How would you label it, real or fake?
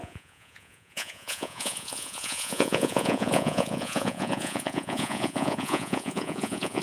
fake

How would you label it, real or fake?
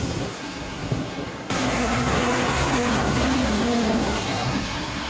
fake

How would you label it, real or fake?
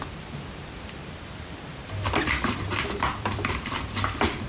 fake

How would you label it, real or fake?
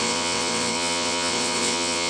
fake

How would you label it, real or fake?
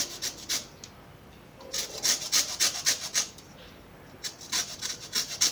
real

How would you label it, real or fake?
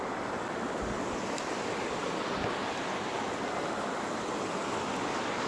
real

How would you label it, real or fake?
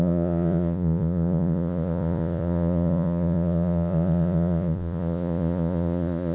fake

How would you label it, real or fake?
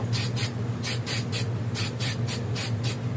real